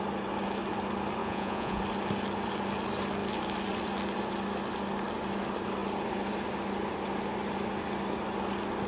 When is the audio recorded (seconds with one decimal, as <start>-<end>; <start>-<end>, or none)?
0.0-1.2; 1.8-8.9